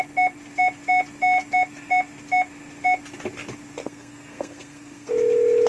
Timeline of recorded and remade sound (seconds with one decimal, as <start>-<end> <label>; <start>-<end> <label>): 0.0-3.8 recorded; 3.8-5.1 remade; 5.1-5.7 recorded